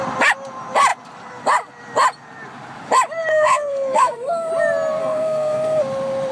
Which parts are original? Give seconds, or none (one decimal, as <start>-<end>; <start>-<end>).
0.0-3.3; 4.5-5.0; 5.8-6.3